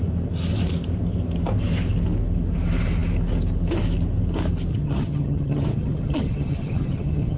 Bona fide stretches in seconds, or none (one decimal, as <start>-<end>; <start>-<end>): 0.0-4.7